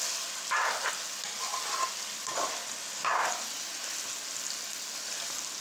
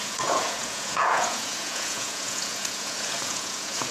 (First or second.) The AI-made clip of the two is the second